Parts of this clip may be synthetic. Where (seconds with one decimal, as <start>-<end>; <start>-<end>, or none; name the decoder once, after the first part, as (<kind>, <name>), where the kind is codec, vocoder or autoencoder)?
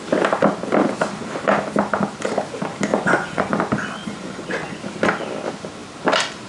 2.9-3.6 (vocoder, Vocos); 4.0-4.8